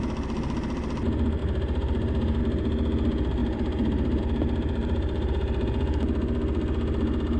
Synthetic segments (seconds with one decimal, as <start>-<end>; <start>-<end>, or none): 1.4-2.4; 3.4-4.2; 4.8-5.3